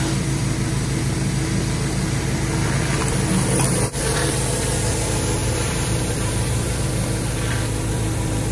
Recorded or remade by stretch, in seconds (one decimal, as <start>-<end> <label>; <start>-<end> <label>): 0.0-5.4 recorded; 5.4-6.8 remade; 6.8-8.5 recorded